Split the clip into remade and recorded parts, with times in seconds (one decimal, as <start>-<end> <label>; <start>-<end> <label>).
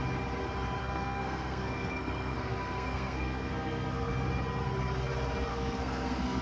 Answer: 0.0-0.8 recorded; 0.8-4.1 remade; 4.1-5.5 recorded; 5.5-6.4 remade